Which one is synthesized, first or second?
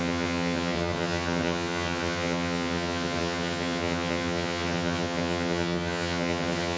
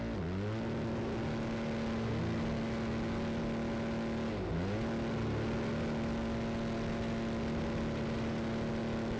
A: first